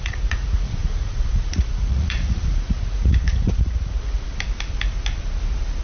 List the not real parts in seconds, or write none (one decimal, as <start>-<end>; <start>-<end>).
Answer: 0.0-4.3